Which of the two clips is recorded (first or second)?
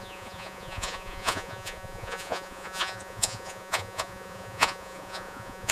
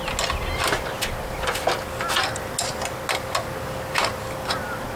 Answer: second